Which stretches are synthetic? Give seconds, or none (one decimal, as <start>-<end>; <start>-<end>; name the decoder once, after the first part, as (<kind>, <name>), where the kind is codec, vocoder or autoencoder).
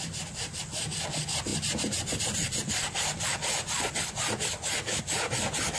none